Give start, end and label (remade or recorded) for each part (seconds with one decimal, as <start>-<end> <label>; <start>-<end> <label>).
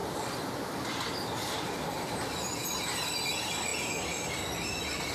0.0-3.1 remade; 3.1-5.1 recorded